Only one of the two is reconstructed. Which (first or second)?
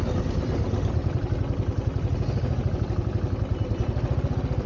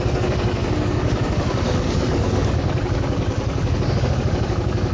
second